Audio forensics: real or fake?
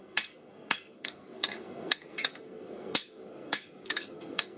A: fake